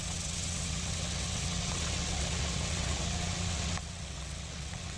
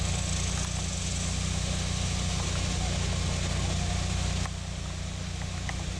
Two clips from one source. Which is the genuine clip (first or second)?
second